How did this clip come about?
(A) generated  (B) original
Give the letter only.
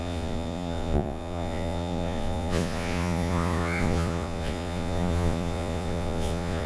A